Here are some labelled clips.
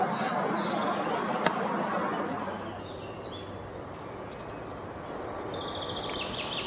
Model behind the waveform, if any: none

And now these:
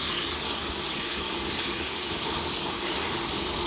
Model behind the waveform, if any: codec, DAC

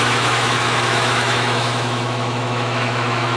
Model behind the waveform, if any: autoencoder, DAC-VAE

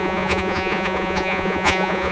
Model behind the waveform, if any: vocoder, Vocos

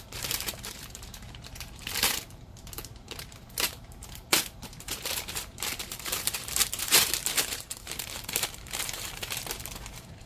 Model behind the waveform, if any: vocoder, BigVGAN v2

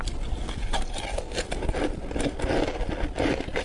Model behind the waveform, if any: none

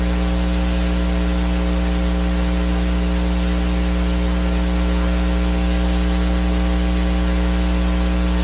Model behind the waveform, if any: none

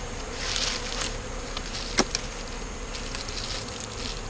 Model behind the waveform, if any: none